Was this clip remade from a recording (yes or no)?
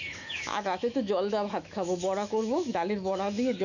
yes